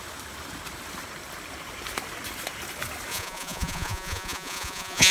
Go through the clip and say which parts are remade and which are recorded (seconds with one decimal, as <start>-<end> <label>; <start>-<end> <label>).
0.0-3.1 recorded; 3.1-5.1 remade